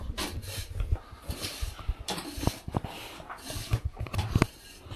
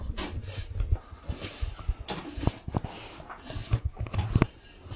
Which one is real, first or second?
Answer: second